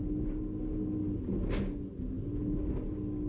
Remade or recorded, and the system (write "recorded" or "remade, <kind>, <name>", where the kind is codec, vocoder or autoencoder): recorded